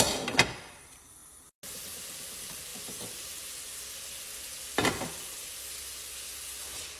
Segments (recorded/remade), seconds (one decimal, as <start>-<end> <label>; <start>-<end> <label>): 0.0-7.0 recorded